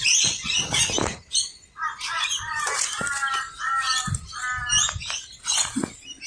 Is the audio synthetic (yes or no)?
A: no